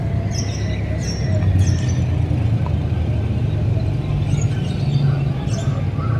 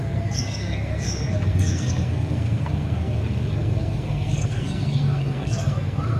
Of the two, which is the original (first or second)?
first